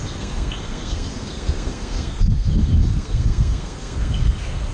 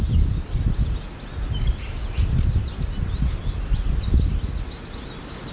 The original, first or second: second